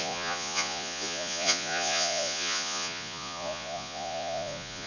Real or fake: fake